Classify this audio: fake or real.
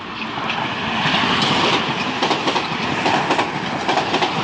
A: real